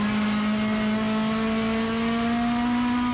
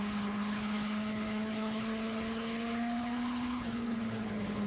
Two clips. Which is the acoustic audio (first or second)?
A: first